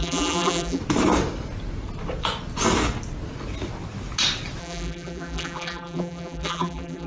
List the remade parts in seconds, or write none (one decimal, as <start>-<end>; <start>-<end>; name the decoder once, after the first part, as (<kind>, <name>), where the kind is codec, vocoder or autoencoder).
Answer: 0.0-0.8 (vocoder, BigVGAN v2); 4.6-7.1